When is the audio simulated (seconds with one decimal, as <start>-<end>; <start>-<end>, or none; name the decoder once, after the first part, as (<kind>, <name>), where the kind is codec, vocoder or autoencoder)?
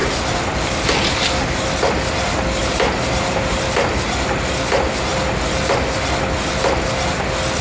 2.6-3.9 (vocoder, BigVGAN v2)